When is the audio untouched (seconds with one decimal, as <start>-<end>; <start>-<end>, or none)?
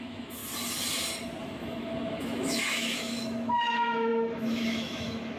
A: 0.4-1.4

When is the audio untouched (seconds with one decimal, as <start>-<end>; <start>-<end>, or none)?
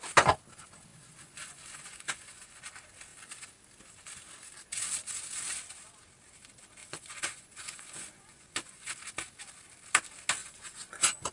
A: 0.0-0.9; 2.6-6.8; 9.0-10.4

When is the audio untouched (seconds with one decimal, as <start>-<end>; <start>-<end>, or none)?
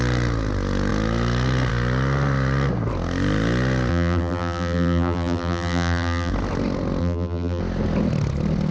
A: 0.0-3.9; 6.3-7.0; 7.6-8.7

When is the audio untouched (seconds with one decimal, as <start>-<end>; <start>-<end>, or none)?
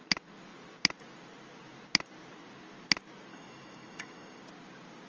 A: 0.0-3.3; 4.4-5.1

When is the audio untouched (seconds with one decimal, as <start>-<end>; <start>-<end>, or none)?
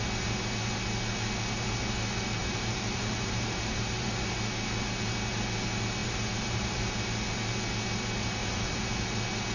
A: 0.0-2.4; 4.1-6.0; 6.8-8.4; 8.9-9.5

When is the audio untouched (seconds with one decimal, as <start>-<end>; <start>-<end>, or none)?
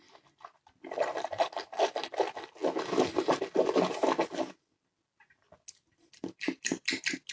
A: 0.0-7.3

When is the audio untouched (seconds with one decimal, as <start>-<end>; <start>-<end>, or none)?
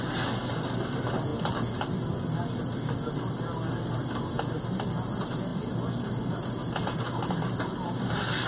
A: 0.0-8.5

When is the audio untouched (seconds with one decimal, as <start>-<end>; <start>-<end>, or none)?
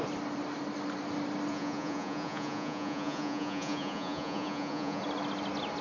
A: 0.0-1.5; 5.0-5.8